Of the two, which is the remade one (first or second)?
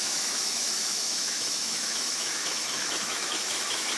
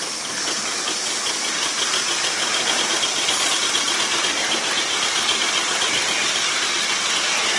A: first